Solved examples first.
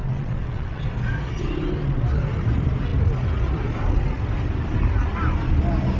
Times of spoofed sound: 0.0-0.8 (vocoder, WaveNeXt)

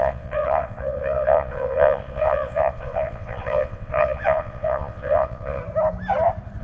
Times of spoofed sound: 0.0-5.6 (vocoder, WaveNeXt)

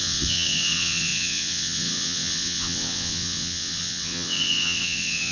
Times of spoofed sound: 0.0-5.3 (vocoder, WaveNeXt)

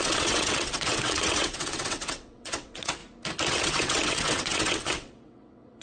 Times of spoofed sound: 0.0-3.0 (vocoder, WaveNeXt); 3.5-5.8

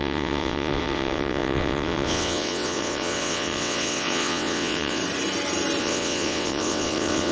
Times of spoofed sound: 0.0-5.0 (vocoder, WaveNeXt); 5.8-7.3